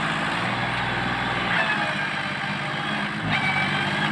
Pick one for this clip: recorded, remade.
recorded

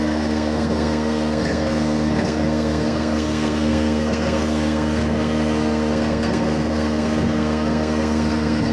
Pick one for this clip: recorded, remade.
remade